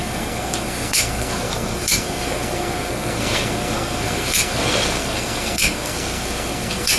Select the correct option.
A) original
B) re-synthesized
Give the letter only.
B